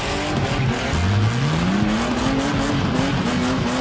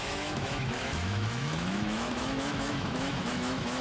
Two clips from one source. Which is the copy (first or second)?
second